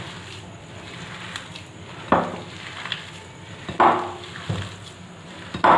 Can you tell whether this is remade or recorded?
recorded